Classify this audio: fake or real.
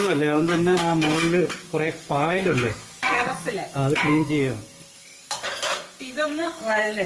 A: fake